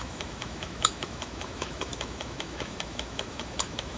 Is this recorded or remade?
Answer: remade